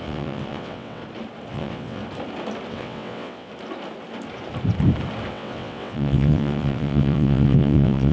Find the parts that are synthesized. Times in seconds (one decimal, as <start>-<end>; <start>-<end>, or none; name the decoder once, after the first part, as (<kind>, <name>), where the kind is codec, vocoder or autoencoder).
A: 0.0-1.0 (vocoder, WaveNeXt); 1.5-2.0; 2.7-3.5; 5.3-8.1